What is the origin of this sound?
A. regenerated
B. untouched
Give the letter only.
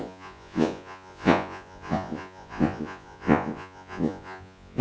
A